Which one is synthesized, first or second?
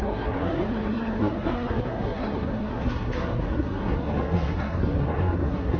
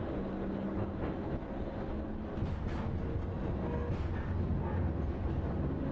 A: first